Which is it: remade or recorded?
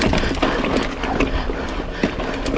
recorded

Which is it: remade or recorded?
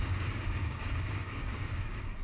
remade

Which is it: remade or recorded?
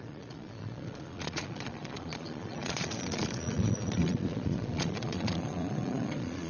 remade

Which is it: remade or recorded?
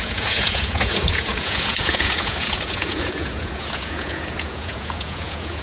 remade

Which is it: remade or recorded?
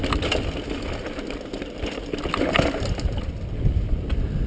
remade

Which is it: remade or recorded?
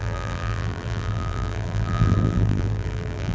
remade